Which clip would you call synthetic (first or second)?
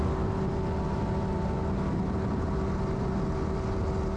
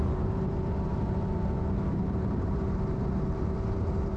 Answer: second